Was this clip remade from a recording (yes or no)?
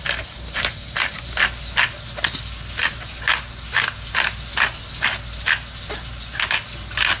no